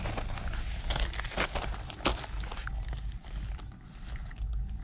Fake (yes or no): no